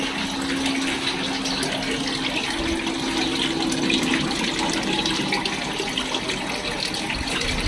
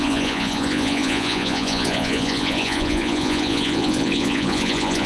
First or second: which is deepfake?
second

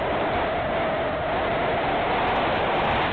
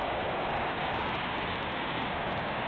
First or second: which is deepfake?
second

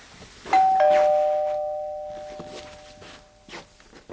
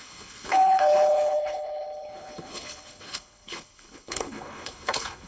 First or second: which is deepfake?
second